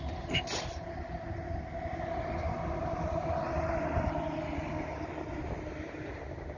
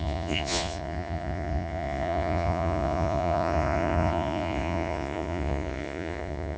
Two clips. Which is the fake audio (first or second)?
second